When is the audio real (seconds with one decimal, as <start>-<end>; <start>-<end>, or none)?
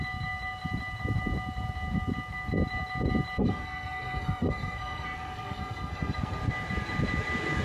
0.0-3.4; 6.4-7.6